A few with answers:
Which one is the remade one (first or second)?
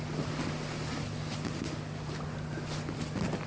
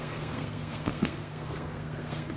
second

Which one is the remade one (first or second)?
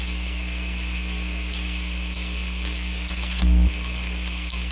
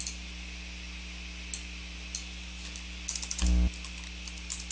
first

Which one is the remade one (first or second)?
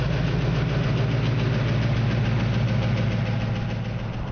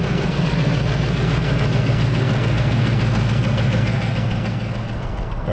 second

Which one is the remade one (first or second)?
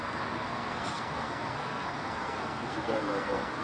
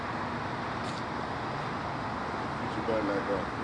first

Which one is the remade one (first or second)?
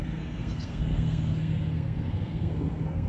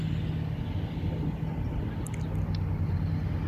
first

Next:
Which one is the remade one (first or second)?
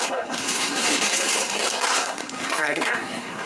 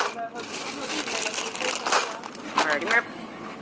first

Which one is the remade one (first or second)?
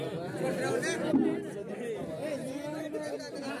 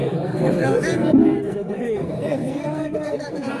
second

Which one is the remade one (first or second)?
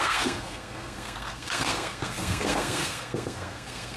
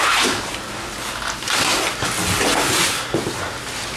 first